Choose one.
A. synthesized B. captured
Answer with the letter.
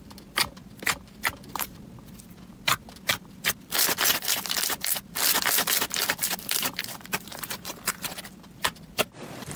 A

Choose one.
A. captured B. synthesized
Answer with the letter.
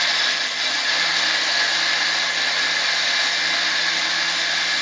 A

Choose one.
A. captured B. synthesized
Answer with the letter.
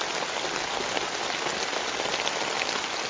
A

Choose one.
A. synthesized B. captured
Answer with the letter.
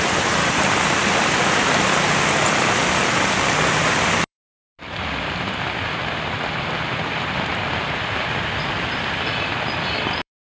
A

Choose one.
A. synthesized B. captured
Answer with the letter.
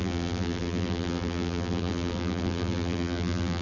A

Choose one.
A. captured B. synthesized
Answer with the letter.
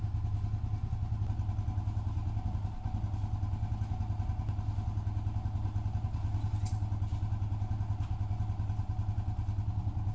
A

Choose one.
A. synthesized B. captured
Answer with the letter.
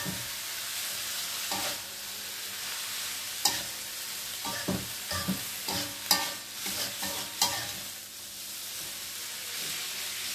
B